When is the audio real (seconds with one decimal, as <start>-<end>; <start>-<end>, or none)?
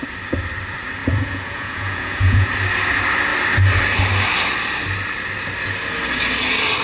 0.0-1.0; 2.5-6.8